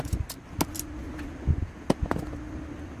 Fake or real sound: real